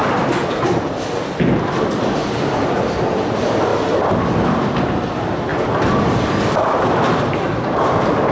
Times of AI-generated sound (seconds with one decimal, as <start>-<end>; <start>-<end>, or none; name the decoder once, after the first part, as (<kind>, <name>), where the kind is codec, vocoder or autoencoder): 1.3-3.7 (vocoder, BigVGAN v2); 4.8-8.3